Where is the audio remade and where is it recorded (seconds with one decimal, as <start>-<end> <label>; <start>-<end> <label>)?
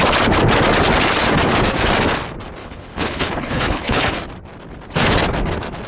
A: 0.0-2.6 recorded; 2.6-4.2 remade; 4.2-5.9 recorded